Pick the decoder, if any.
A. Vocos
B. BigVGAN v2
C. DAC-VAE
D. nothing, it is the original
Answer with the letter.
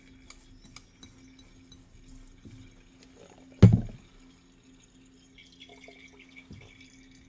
D